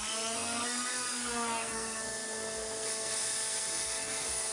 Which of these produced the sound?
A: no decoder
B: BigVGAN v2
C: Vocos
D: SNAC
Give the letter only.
D